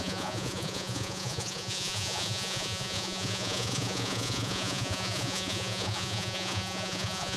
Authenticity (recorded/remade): remade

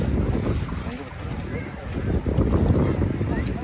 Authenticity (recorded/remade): recorded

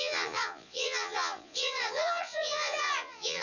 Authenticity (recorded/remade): remade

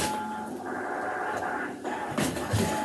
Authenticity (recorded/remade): recorded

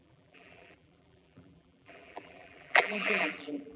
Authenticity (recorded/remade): remade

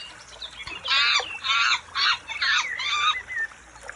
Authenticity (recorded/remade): recorded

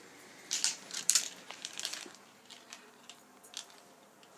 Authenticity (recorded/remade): remade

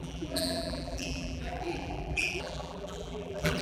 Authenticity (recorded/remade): remade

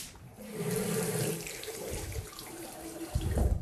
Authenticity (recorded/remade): remade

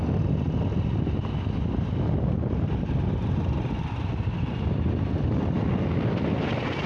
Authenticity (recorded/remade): recorded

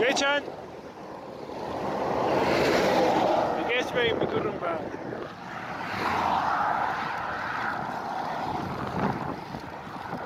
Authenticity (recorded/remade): recorded